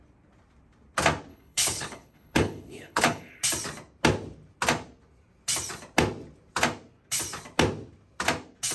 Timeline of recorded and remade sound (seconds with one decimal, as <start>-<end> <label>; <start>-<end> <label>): 0.0-1.3 recorded; 1.3-3.4 remade; 3.4-8.7 recorded